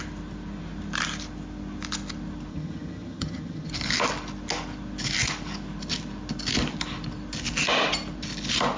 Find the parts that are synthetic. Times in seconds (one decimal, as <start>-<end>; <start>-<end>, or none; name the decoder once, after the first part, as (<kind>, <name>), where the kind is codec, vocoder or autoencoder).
2.5-3.7 (vocoder, HiFi-GAN)